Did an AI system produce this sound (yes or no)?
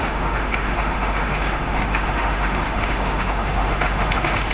yes